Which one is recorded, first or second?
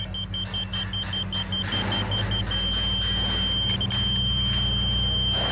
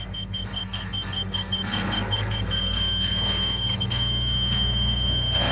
first